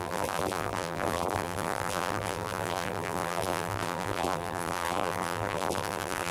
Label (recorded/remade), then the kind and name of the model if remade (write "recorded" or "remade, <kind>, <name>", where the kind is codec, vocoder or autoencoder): remade, vocoder, BigVGAN v2